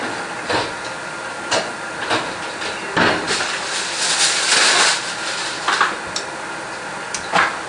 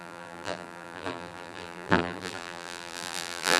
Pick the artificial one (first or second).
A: second